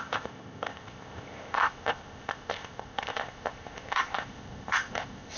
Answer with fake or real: fake